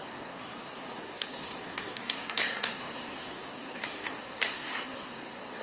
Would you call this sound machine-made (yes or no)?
yes